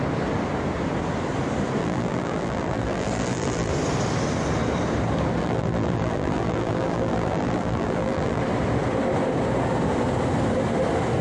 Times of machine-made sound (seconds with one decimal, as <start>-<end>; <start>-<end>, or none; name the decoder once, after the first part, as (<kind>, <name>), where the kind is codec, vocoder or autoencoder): 1.8-3.7 (vocoder, BigVGAN v2); 5.4-8.4